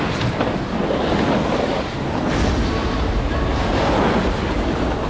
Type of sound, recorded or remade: recorded